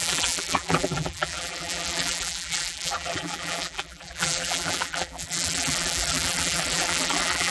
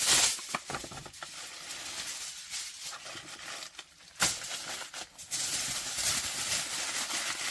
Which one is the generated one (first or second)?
first